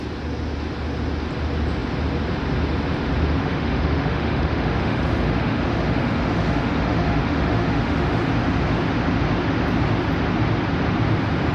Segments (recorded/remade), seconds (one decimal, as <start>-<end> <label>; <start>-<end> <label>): 0.0-3.4 recorded; 3.4-8.3 remade; 8.3-11.5 recorded